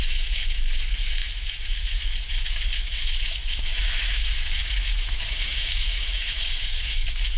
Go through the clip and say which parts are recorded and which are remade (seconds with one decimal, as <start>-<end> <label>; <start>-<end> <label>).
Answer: 0.0-7.4 remade